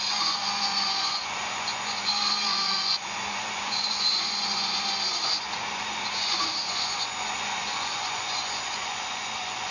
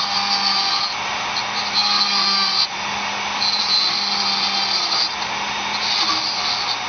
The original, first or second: second